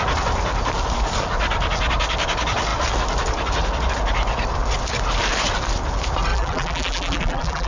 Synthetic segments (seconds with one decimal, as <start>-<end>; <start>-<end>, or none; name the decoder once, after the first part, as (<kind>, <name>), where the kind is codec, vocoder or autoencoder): 6.3-7.7 (vocoder, BigVGAN v2)